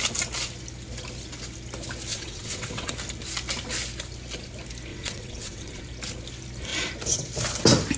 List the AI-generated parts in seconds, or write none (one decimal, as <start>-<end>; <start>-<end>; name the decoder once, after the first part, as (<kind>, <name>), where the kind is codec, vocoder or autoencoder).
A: 2.1-2.9 (vocoder, WaveNeXt); 4.9-5.8